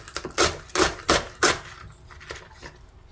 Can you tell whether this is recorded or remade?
recorded